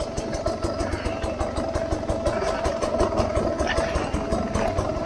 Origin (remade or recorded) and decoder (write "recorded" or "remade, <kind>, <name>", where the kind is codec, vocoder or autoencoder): recorded